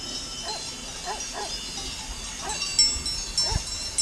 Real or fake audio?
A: real